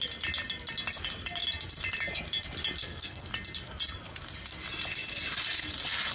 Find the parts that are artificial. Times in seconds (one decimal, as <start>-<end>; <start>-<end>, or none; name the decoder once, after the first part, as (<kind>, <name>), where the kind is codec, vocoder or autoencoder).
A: 2.8-3.3 (codec, SNAC)